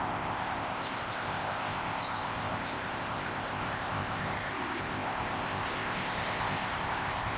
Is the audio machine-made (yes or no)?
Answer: yes